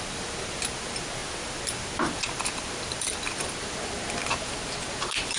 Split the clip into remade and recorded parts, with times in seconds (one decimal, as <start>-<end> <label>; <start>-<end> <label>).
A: 0.0-5.4 recorded